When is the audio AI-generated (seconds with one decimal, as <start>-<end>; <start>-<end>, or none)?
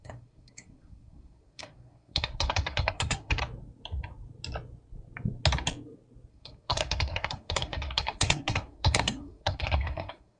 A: 0.0-3.4; 6.3-10.4